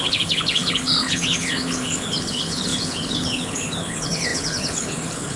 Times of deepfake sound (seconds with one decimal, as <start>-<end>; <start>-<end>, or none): 0.0-5.4